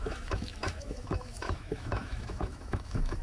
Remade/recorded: remade